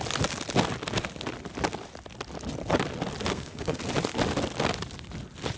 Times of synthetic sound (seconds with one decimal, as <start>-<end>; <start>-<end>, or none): 3.3-3.8